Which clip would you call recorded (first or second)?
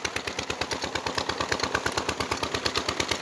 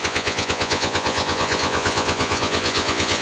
first